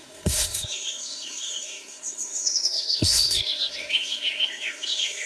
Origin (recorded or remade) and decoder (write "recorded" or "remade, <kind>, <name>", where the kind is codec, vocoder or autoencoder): remade, codec, SNAC